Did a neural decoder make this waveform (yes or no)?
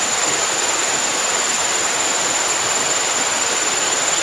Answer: no